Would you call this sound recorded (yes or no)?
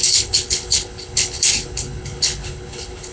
no